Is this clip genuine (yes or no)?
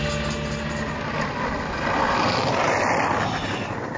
yes